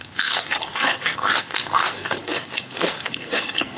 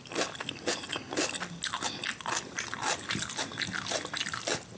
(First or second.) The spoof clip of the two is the first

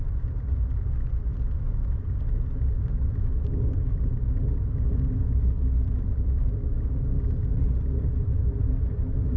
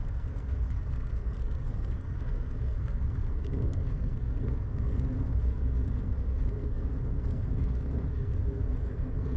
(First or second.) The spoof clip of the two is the second